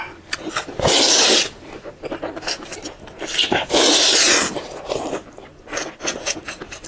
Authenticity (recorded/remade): recorded